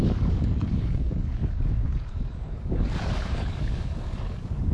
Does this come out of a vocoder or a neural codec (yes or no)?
yes